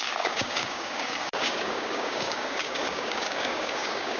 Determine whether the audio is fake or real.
fake